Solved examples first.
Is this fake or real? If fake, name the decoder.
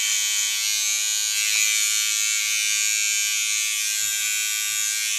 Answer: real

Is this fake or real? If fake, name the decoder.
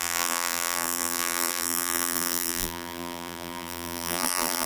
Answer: fake, vocoder, BigVGAN v2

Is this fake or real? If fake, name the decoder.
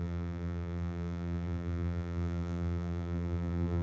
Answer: fake, vocoder, BigVGAN v2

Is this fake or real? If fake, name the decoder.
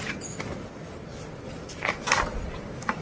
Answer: real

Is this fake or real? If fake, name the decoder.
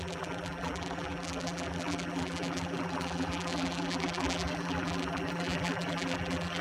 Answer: fake, vocoder, BigVGAN v2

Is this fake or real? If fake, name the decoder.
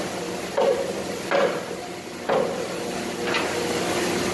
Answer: real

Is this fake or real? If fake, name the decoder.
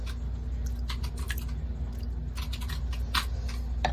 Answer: real